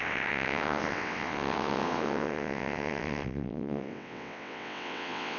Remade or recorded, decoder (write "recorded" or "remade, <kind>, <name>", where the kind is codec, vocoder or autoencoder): remade, vocoder, WaveNeXt